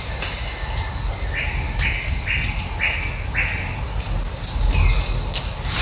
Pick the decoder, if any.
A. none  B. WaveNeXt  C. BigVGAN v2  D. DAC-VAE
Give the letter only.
A